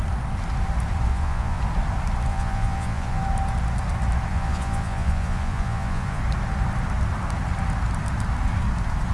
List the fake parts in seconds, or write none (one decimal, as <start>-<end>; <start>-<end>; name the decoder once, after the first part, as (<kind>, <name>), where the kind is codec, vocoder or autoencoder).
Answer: 1.1-1.6 (vocoder, Vocos); 2.3-3.2; 4.3-6.2